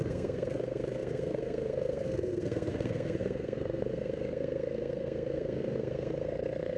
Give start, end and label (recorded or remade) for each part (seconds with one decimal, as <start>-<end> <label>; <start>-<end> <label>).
0.0-6.8 remade